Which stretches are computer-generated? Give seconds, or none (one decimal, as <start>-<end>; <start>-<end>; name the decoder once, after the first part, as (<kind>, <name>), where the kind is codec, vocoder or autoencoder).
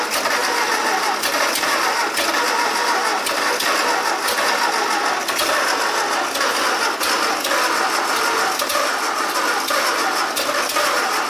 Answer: none